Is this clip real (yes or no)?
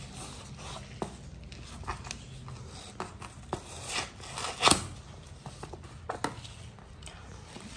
yes